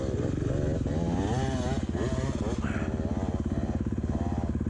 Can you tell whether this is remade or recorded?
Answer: recorded